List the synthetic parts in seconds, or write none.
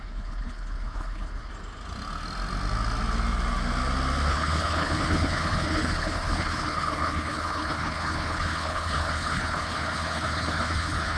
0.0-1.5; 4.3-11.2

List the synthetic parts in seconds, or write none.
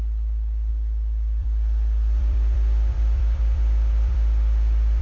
0.0-5.0